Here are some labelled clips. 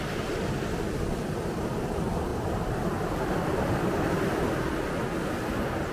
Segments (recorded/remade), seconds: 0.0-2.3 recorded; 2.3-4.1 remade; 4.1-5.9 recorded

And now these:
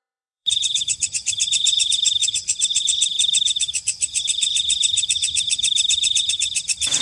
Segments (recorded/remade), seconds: 0.0-2.2 remade; 2.2-6.3 recorded; 6.3-7.0 remade

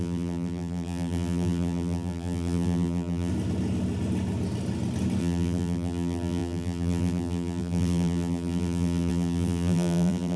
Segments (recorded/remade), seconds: 0.0-3.3 remade; 3.3-5.2 recorded; 5.2-10.4 remade

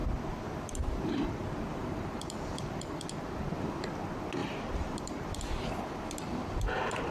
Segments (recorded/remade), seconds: 0.0-1.7 recorded; 1.7-3.0 remade; 3.0-4.4 recorded; 4.4-5.3 remade; 5.3-7.1 recorded

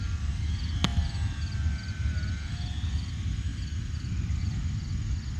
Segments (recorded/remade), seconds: 0.0-5.4 recorded

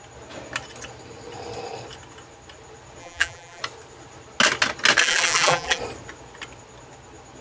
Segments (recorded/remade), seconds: 0.0-3.0 recorded; 3.0-3.6 remade; 3.6-5.0 recorded; 5.0-5.8 remade; 5.8-7.4 recorded